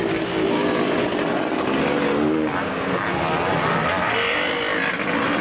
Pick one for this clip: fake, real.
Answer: real